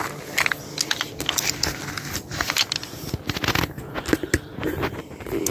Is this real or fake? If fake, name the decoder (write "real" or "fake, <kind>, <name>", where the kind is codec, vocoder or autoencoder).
real